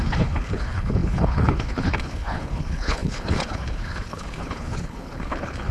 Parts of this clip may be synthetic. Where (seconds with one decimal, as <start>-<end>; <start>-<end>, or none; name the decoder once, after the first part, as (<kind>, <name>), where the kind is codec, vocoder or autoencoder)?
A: 0.0-5.7 (codec, HILCodec)